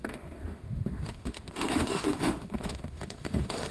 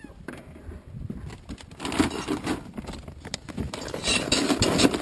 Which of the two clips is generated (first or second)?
first